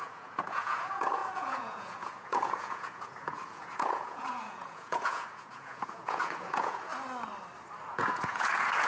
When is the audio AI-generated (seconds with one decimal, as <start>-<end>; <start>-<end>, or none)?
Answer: 0.0-6.9; 7.9-8.9